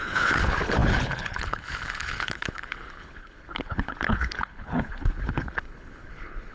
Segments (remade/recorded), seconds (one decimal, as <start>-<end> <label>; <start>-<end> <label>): 0.0-6.5 remade